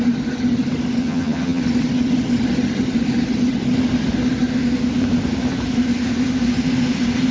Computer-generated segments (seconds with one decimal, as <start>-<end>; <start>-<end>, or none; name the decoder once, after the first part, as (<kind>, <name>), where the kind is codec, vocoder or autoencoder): 1.0-1.6 (vocoder, HiFi-GAN)